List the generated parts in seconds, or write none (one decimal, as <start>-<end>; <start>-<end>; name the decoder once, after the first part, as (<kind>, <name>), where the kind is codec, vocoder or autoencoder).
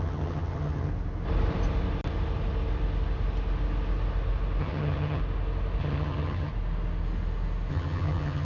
0.0-0.9 (vocoder, HiFi-GAN); 4.6-5.2; 5.8-6.5; 7.7-8.4